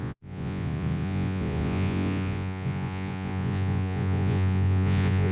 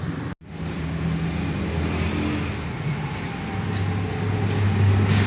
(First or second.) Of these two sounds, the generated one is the first